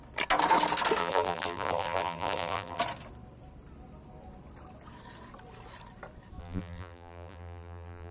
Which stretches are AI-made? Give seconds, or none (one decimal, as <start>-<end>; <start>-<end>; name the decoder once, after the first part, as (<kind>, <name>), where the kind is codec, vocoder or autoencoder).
1.0-2.8 (vocoder, BigVGAN v2); 6.4-8.1